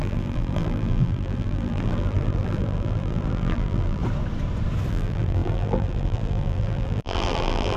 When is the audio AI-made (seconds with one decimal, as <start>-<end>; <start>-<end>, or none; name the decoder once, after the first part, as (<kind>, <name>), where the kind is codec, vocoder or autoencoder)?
0.0-4.0 (vocoder, BigVGAN v2); 4.9-7.8